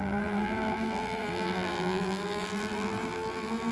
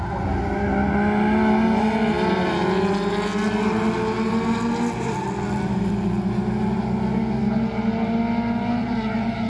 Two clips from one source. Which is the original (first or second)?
second